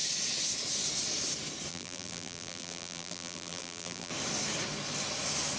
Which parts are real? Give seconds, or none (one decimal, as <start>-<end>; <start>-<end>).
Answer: 0.0-1.7; 4.1-5.6